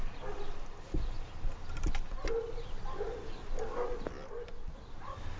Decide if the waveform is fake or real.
real